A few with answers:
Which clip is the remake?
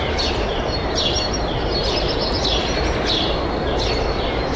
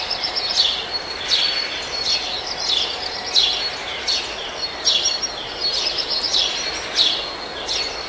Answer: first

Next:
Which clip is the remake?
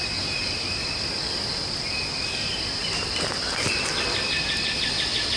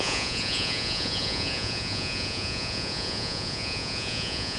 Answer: second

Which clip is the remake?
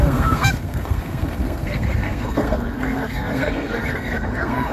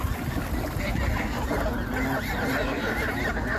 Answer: first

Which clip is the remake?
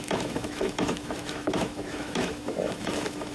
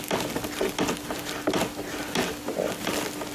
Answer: first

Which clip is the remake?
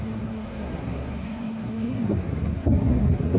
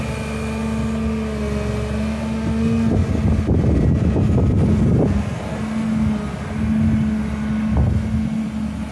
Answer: first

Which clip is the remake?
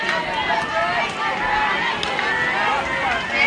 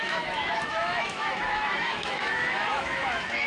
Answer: second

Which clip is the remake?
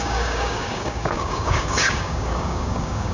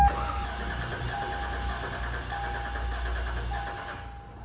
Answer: first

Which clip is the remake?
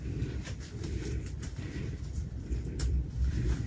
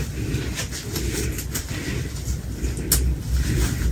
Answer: first